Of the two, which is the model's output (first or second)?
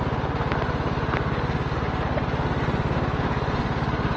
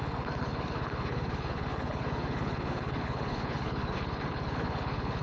second